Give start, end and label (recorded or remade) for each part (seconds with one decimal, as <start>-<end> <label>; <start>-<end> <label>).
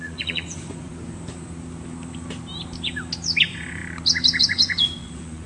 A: 0.0-0.9 remade; 0.9-3.4 recorded; 3.4-3.8 remade; 3.8-4.4 recorded; 4.4-5.5 remade